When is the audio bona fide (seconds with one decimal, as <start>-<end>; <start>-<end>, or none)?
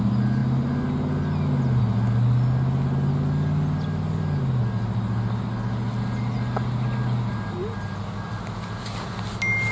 0.0-9.7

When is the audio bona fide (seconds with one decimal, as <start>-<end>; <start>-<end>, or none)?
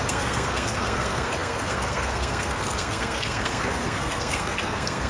none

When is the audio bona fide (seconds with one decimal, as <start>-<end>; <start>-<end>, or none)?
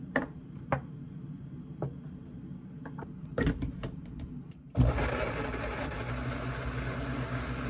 0.0-4.0; 5.1-7.7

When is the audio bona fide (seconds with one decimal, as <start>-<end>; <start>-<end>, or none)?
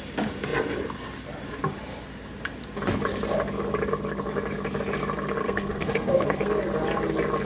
0.0-5.4; 6.5-7.5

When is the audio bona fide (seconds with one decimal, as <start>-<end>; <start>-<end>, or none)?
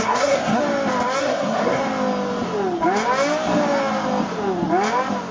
0.6-1.2; 1.8-5.3